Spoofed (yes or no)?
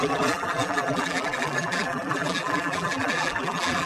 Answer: yes